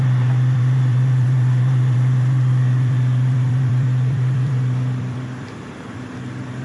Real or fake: fake